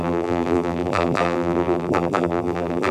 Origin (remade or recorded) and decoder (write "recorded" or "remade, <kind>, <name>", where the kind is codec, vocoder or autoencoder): remade, vocoder, BigVGAN v2